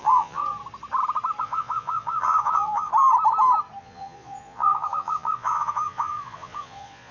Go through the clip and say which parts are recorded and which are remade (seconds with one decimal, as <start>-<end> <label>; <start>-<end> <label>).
0.0-0.4 remade; 0.4-1.4 recorded; 1.4-2.9 remade; 2.9-3.8 recorded; 3.8-7.1 remade

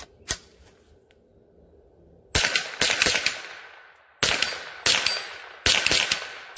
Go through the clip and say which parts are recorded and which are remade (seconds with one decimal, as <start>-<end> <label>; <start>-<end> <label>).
0.0-6.6 recorded

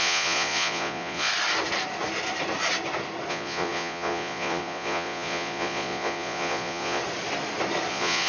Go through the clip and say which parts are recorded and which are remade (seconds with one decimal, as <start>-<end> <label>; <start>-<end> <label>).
0.0-1.3 remade; 1.3-3.3 recorded; 3.3-7.0 remade; 7.0-7.9 recorded; 7.9-8.3 remade

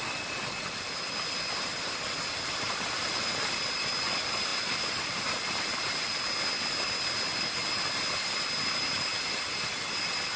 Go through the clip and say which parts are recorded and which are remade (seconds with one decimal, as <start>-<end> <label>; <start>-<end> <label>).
0.0-10.4 recorded

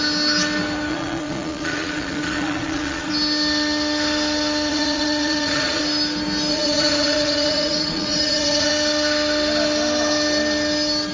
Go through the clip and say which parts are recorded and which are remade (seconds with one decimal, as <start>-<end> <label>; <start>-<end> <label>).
0.0-0.9 recorded; 0.9-3.1 remade; 3.1-4.7 recorded; 4.7-5.8 remade; 5.8-6.5 recorded; 6.5-8.7 remade; 8.7-11.1 recorded

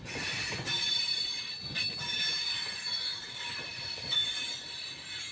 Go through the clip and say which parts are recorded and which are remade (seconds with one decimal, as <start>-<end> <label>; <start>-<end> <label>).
0.0-5.3 recorded